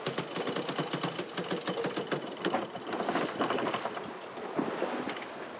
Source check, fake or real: real